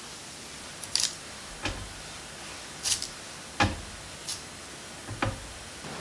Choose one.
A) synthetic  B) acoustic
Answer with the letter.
B